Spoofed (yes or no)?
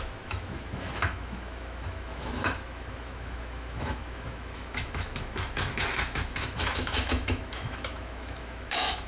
yes